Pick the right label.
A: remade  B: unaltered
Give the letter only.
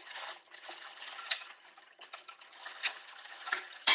A